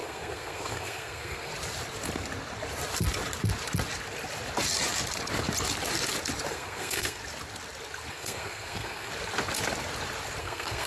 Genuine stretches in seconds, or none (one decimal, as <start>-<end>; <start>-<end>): 1.5-6.5; 7.2-8.1; 9.1-10.4